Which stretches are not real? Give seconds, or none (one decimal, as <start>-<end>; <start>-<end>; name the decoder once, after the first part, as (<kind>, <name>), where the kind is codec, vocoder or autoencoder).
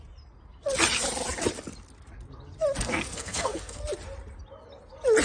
2.8-3.8 (codec, SNAC)